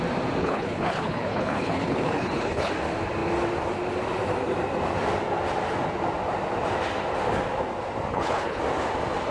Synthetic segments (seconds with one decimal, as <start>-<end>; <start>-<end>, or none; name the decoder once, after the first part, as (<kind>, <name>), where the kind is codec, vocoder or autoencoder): 0.4-2.7 (codec, HILCodec); 8.1-8.6